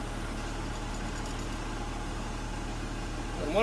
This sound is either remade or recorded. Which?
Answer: recorded